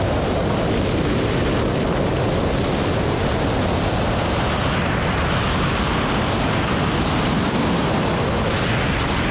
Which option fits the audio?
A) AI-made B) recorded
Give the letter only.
B